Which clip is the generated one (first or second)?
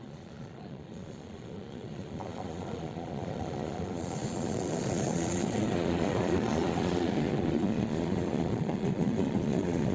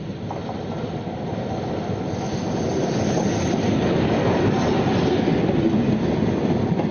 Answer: first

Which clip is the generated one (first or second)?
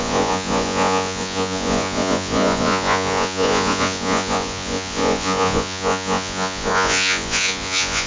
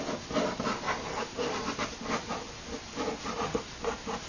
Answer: first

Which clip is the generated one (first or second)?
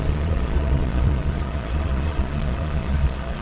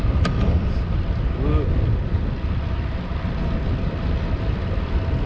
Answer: first